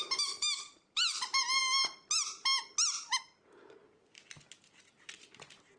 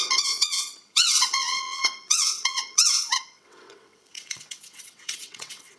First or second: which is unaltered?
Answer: first